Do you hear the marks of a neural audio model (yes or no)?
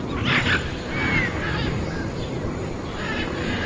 no